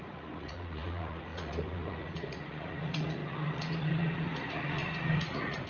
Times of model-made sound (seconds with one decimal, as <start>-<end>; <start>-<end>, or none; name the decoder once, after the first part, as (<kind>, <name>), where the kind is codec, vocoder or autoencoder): 0.0-5.7 (vocoder, Vocos)

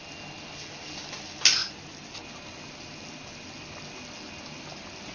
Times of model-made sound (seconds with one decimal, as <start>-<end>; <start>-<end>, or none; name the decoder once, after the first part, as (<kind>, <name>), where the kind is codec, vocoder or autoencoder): none

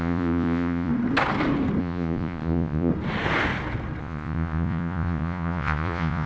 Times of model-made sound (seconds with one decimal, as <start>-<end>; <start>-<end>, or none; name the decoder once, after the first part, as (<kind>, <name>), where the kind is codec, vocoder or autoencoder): 0.0-0.9 (vocoder, Vocos); 1.8-2.9; 4.0-6.3